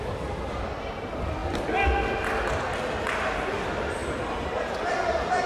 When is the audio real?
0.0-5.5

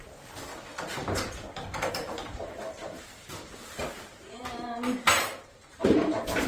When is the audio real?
0.5-1.9; 4.4-5.9

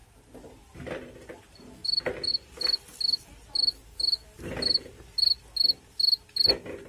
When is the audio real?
0.0-1.8; 2.3-4.8; 5.3-6.9

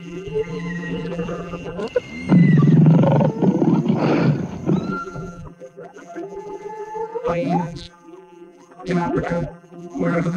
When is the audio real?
1.8-4.9

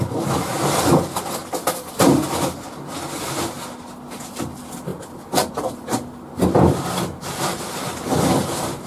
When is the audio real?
0.0-8.9

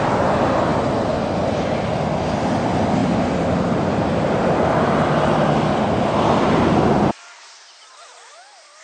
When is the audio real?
0.0-3.0; 5.7-8.8